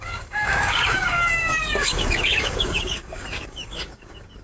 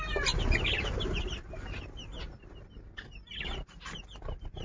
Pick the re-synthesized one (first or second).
first